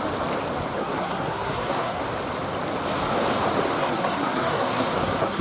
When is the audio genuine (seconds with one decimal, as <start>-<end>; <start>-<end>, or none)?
0.0-0.8; 2.0-3.8